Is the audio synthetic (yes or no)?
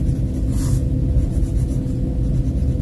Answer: no